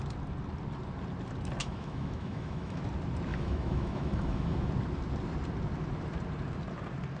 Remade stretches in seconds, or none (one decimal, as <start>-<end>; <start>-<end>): 1.6-2.8; 3.3-4.7